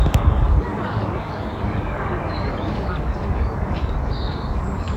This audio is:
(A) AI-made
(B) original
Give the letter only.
A